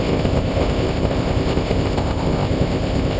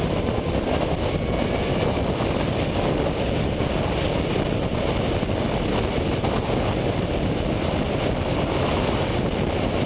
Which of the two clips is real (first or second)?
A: second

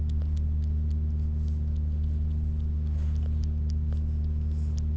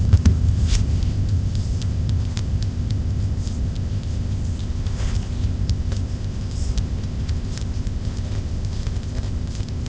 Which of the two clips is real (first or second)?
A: first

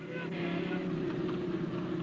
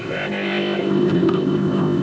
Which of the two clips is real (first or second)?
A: first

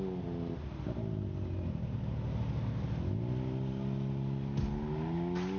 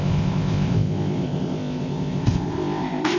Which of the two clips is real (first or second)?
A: first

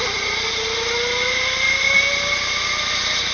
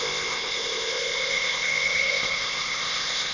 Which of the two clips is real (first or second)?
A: first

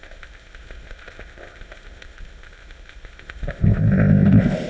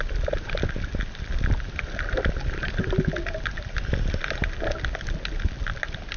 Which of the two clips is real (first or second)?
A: second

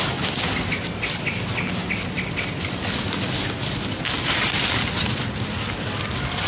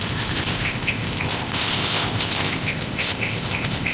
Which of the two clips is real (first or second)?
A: first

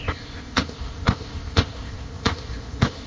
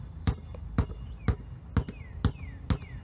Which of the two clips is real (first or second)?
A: second